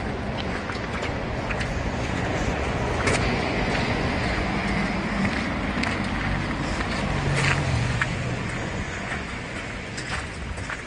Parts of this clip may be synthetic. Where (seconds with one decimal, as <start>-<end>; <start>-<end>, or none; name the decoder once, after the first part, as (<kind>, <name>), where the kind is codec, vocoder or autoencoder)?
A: 0.0-4.8 (vocoder, Vocos); 7.6-10.9